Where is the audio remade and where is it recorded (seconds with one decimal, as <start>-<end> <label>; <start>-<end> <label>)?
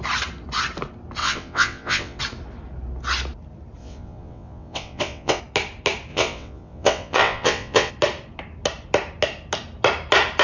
0.0-1.2 recorded; 1.2-2.2 remade; 2.2-3.8 recorded; 3.8-5.4 remade; 5.4-6.1 recorded; 6.1-7.9 remade; 7.9-10.4 recorded